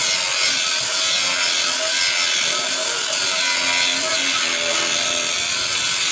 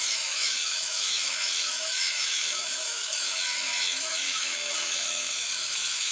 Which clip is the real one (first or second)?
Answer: first